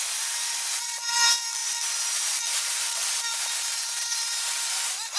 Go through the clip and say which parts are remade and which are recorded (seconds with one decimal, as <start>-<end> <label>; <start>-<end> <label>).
0.0-1.6 recorded; 1.6-4.7 remade; 4.7-5.2 recorded